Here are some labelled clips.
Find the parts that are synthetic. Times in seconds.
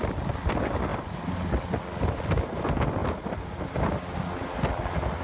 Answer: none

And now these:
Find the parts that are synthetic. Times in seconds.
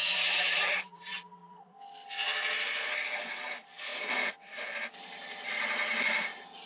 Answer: 0.0-1.4 (vocoder, BigVGAN v2); 3.5-3.9; 6.0-6.7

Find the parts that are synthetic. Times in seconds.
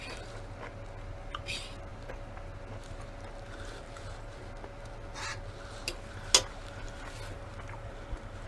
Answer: none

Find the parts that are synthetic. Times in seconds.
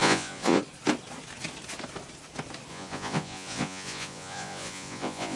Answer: 0.0-0.6 (vocoder, Vocos); 2.7-5.4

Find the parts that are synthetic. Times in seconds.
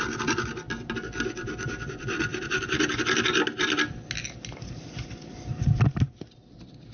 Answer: none